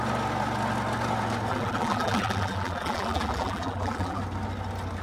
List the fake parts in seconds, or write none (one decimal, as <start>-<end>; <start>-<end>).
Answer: 1.5-4.2